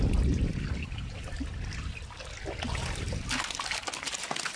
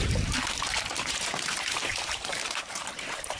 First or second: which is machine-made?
second